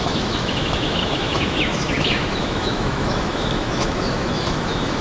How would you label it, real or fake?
fake